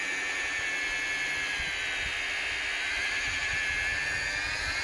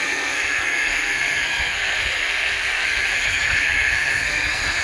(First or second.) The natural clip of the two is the first